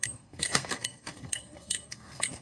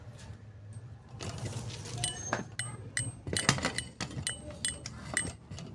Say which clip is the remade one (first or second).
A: first